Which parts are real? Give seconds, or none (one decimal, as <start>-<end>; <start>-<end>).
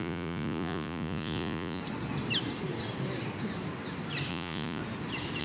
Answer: 1.8-4.3; 4.8-5.4